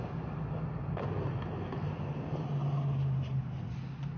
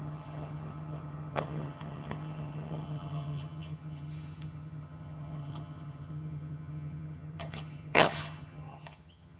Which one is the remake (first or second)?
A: second